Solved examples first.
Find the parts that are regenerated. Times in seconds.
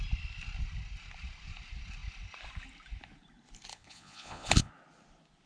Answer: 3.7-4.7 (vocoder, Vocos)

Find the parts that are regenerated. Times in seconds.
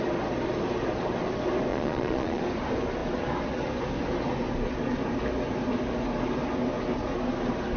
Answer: 1.7-2.4 (vocoder, Vocos)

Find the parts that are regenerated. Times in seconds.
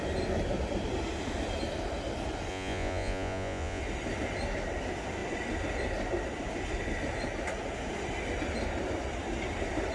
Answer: 2.5-3.8 (vocoder, Vocos)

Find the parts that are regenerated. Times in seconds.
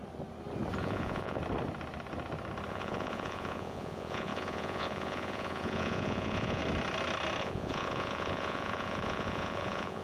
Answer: 0.8-1.4 (vocoder, Vocos); 2.7-6.6; 7.4-10.0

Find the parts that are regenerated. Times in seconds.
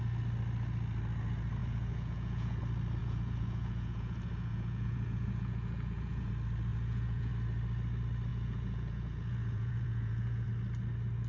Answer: 1.6-2.6 (vocoder, Vocos); 3.0-6.3; 6.7-7.3; 8.3-10.5